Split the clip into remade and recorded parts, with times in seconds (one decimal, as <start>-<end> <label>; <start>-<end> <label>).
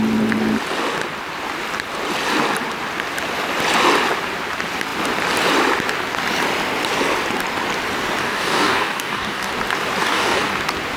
0.0-8.2 recorded; 8.2-9.5 remade; 9.5-10.0 recorded; 10.0-10.5 remade; 10.5-11.0 recorded